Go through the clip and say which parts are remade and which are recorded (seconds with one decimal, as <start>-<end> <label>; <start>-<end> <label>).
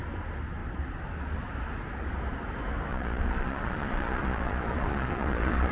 0.0-2.9 recorded; 2.9-5.7 remade